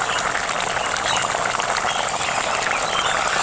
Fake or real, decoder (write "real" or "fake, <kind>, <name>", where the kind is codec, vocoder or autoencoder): real